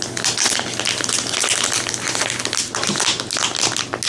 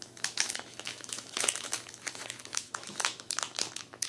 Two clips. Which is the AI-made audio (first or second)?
second